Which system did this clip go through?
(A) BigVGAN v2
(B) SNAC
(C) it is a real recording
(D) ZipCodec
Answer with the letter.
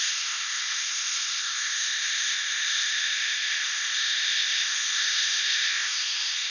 D